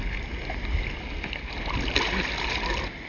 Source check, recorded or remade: recorded